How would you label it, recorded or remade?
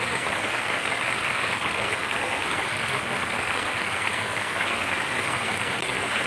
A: remade